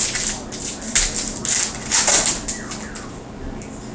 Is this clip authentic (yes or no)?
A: yes